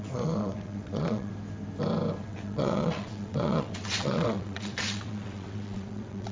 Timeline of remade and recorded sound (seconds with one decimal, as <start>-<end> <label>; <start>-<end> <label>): 0.0-1.3 remade; 1.3-2.2 recorded; 2.2-6.3 remade